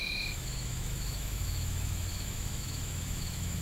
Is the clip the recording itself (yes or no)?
no